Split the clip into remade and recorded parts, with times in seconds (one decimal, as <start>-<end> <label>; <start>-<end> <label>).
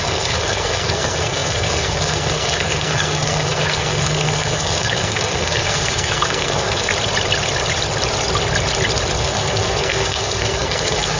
0.0-6.9 remade; 6.9-9.2 recorded; 9.2-11.2 remade